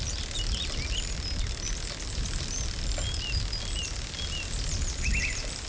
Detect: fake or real real